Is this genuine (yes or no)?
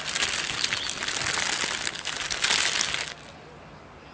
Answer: yes